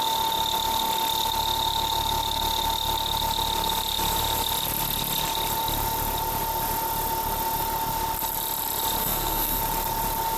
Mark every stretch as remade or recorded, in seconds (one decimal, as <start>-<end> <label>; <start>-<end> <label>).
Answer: 0.0-9.0 recorded; 9.0-9.6 remade; 9.6-10.4 recorded